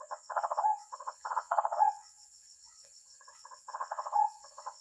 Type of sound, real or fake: fake